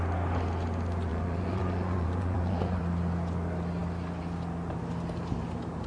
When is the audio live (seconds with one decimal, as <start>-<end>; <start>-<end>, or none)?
0.0-1.1; 2.8-5.9